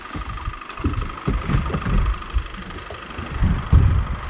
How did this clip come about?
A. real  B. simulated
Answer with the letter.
A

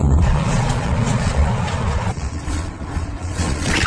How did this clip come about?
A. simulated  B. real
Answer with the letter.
A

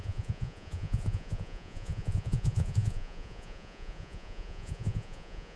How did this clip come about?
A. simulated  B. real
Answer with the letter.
A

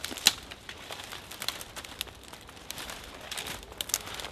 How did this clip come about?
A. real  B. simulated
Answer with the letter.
A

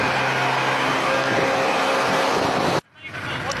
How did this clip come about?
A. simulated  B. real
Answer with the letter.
B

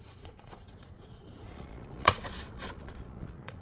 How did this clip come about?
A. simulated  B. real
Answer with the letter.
A